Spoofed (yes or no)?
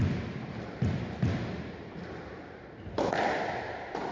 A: no